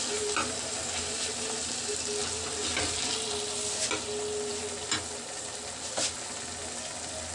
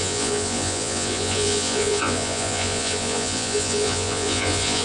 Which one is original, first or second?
first